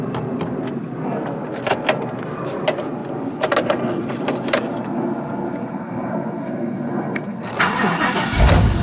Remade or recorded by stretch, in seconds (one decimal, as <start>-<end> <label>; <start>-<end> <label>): 0.0-5.7 recorded; 5.7-7.5 remade; 7.5-8.8 recorded